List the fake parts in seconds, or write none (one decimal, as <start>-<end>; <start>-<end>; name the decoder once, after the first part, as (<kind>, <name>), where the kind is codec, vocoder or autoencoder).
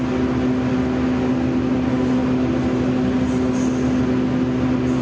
none